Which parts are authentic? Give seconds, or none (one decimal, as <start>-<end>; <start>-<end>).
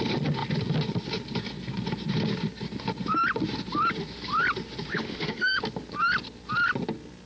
0.0-4.9; 5.6-7.3